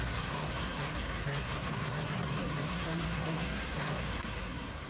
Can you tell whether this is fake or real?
fake